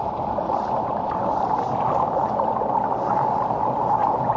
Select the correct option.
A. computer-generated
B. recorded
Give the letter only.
B